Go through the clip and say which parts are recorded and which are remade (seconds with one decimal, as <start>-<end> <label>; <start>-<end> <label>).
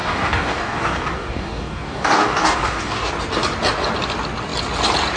0.0-3.1 remade; 3.1-5.2 recorded